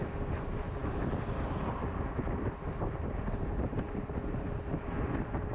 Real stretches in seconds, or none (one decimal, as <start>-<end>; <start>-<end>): 0.0-0.8; 2.6-5.5